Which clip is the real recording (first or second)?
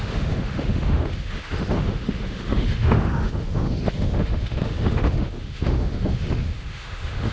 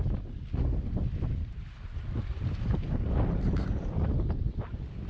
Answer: second